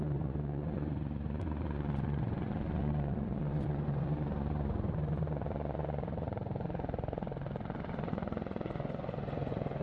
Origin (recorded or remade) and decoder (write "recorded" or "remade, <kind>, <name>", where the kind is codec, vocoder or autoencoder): remade, vocoder, Vocos